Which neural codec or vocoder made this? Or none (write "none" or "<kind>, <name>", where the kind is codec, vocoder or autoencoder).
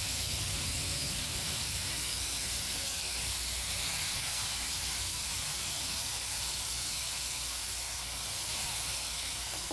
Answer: codec, SNAC